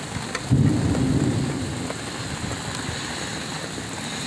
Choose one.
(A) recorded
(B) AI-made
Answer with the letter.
A